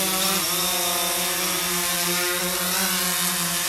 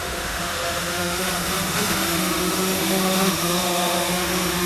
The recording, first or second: first